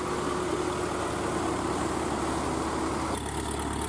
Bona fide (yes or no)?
yes